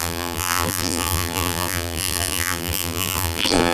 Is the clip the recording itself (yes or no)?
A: no